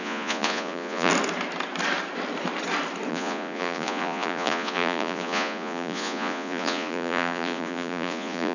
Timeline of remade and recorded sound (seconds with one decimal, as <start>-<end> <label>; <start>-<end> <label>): 0.0-1.1 remade; 1.1-3.1 recorded; 3.1-8.5 remade